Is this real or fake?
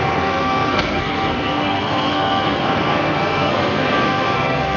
fake